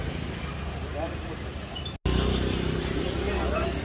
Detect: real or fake real